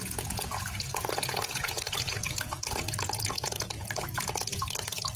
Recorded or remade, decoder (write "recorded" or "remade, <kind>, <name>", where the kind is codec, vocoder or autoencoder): remade, vocoder, Vocos